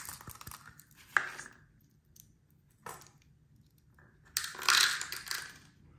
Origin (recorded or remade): recorded